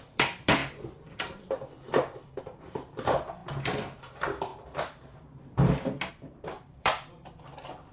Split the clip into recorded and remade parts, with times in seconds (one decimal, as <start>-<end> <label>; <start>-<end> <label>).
0.0-3.4 remade; 3.4-4.0 recorded; 4.0-4.5 remade; 4.5-6.1 recorded; 6.1-7.9 remade